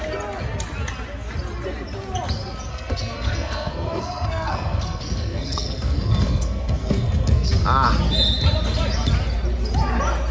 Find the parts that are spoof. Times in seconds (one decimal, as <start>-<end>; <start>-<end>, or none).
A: 2.7-7.5

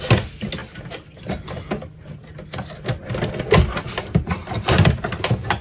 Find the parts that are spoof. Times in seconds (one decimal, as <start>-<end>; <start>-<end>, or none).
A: none

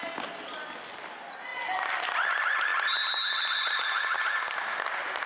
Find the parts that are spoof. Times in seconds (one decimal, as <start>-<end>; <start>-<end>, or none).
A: none

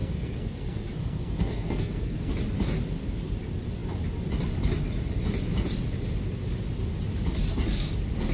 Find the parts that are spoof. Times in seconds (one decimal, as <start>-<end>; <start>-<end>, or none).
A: 0.0-2.3

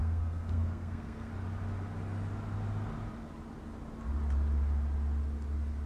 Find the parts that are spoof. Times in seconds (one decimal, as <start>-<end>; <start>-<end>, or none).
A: 0.0-1.3

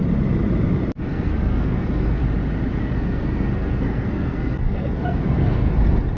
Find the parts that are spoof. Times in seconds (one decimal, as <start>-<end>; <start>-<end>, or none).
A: 1.1-2.2; 2.8-5.7

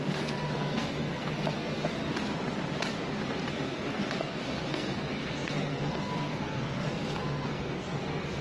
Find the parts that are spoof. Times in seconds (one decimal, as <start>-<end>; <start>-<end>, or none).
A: 0.0-2.0; 3.5-8.4

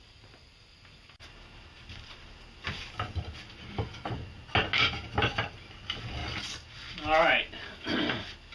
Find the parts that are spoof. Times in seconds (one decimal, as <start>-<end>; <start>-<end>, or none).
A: none